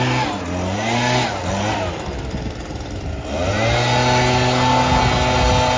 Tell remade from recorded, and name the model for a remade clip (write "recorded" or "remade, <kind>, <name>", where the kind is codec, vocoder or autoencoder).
recorded